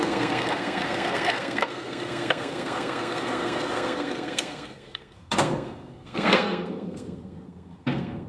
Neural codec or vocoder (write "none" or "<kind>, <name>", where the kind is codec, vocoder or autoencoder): codec, SNAC